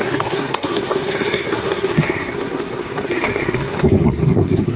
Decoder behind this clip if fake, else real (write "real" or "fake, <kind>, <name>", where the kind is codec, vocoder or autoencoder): fake, codec, SNAC